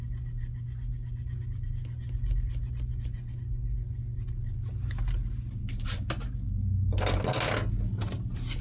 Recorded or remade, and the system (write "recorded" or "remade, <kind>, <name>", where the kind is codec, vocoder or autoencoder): recorded